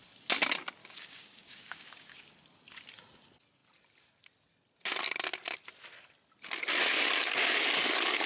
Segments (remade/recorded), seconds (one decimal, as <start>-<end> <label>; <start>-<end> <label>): 0.0-0.8 recorded; 0.8-2.2 remade; 2.2-8.3 recorded

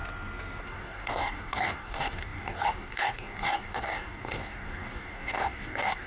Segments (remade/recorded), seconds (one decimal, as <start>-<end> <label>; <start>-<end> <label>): 0.0-0.6 recorded; 0.6-6.1 remade

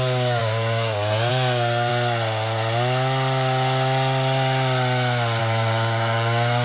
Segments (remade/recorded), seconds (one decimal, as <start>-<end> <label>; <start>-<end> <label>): 0.0-1.9 remade; 1.9-5.4 recorded; 5.4-6.6 remade

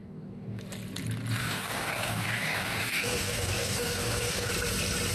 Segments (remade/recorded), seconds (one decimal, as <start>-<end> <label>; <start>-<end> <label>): 0.0-0.6 remade; 0.6-1.4 recorded; 1.4-4.5 remade; 4.5-5.1 recorded

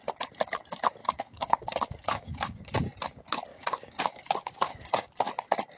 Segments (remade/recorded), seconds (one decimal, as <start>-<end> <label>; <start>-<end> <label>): 0.0-1.0 recorded; 1.0-2.8 remade; 2.8-3.5 recorded; 3.5-5.0 remade; 5.0-5.8 recorded